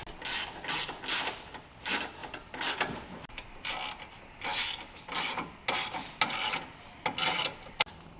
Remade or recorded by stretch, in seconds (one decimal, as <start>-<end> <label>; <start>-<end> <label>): 0.0-8.2 recorded